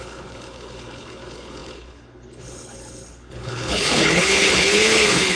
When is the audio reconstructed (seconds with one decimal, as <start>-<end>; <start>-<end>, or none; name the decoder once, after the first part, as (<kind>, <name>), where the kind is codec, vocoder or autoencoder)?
0.0-5.4 (codec, HILCodec)